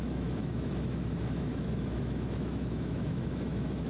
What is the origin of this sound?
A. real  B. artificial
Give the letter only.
B